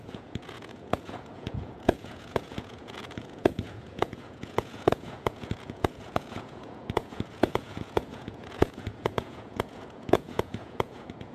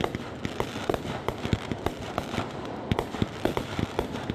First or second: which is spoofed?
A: first